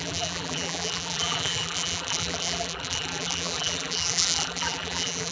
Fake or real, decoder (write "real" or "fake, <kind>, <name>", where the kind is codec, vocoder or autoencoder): fake, vocoder, BigVGAN v2